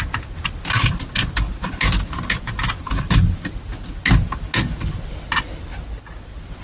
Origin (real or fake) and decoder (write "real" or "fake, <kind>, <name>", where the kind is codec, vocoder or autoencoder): real